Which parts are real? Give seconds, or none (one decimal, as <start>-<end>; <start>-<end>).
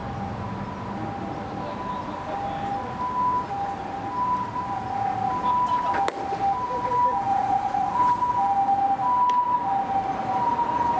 0.0-7.3; 8.1-11.0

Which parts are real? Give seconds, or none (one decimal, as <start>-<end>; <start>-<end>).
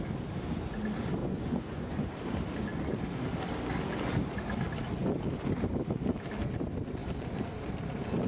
0.0-1.2; 2.1-8.3